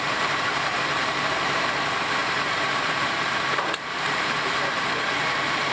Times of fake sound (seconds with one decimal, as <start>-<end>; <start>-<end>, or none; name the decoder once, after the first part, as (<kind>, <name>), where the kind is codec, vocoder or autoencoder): 0.0-5.7 (vocoder, BigVGAN v2)